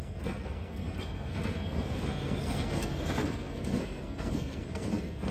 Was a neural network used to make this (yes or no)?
yes